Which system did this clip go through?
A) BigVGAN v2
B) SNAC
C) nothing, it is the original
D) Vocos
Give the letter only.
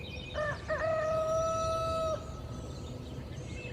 C